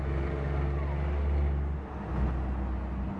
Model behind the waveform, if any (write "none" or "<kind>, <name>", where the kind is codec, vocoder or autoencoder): none